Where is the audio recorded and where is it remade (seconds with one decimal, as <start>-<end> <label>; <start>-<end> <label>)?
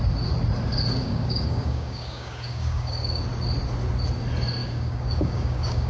0.0-1.0 recorded; 1.0-3.2 remade; 3.2-4.6 recorded; 4.6-5.9 remade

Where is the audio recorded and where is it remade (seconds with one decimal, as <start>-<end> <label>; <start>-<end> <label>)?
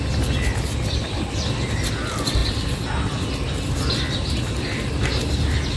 0.0-5.8 recorded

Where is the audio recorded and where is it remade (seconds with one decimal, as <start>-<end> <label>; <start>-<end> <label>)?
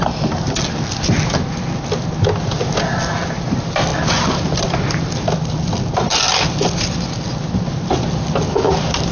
0.0-9.1 recorded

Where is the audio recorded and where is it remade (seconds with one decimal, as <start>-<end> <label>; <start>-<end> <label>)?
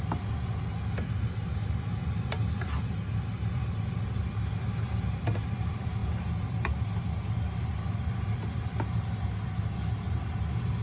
0.0-10.8 recorded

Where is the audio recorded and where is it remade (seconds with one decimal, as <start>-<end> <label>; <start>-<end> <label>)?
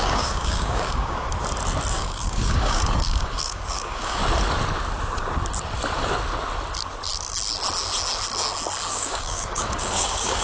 0.0-1.3 remade; 1.3-1.9 recorded; 1.9-4.2 remade; 4.2-8.9 recorded; 8.9-10.4 remade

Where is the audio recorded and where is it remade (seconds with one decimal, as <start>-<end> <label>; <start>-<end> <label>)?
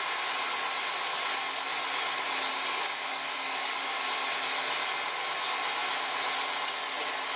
0.0-2.5 recorded; 2.5-4.0 remade; 4.0-7.4 recorded